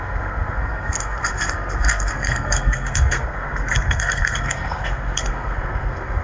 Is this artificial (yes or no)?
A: yes